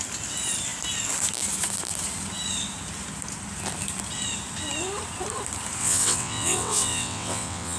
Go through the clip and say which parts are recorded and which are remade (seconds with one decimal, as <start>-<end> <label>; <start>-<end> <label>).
0.0-5.8 recorded; 5.8-7.8 remade